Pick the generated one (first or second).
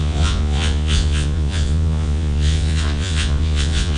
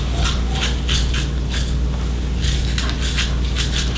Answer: first